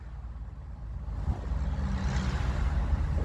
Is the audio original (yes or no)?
yes